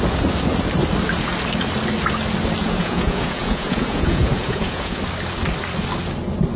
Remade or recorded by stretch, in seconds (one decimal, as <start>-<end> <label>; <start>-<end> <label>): 0.0-2.6 recorded; 2.6-5.0 remade; 5.0-6.6 recorded